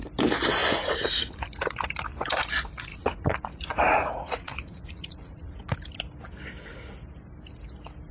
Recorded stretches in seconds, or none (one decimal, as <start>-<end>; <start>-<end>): 0.0-0.6; 1.3-2.9; 5.7-8.1